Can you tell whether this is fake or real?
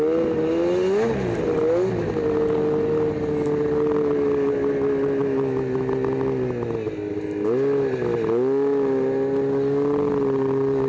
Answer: real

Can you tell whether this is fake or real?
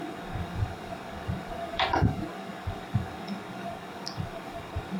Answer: fake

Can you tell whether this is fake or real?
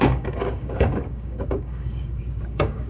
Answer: fake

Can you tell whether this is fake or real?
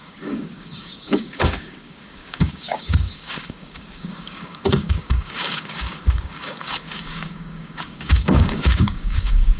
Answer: fake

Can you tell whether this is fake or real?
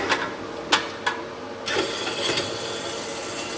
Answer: real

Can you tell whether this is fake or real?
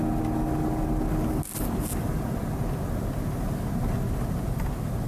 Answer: real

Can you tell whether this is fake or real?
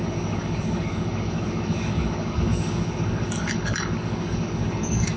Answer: fake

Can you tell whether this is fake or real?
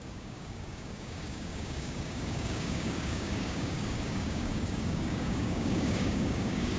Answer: fake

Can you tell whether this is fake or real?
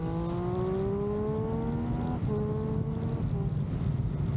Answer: real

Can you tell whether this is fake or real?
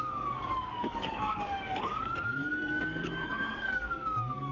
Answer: fake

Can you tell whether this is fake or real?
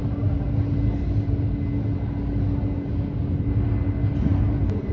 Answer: real